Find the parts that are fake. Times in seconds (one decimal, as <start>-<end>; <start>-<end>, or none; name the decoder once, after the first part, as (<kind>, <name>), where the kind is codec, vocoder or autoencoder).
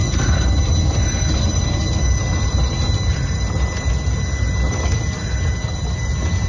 none